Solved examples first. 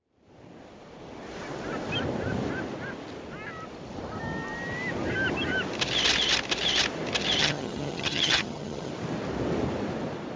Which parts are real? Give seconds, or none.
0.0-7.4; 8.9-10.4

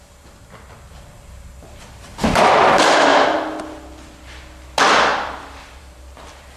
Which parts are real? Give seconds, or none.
0.0-0.9; 2.4-5.1; 5.8-6.6

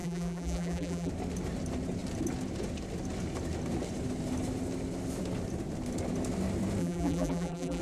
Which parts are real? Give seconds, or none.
1.1-6.8

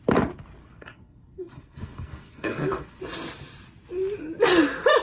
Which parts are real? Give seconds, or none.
0.0-0.6; 3.0-5.0

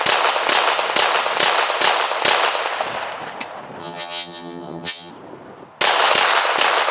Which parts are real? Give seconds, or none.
0.0-3.8; 5.1-6.9

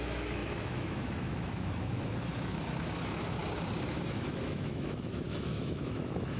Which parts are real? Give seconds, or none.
3.4-3.9

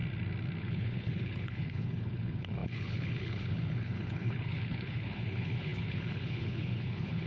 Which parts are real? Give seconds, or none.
0.0-0.6

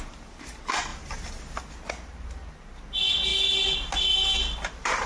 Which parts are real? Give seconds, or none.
0.0-5.1